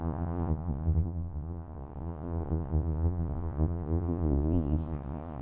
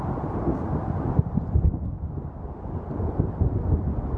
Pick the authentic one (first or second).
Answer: second